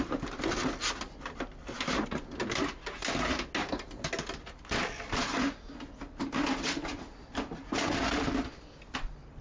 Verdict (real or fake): real